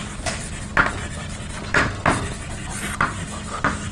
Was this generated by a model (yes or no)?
no